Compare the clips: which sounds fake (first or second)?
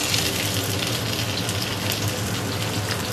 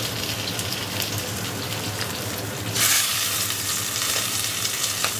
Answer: second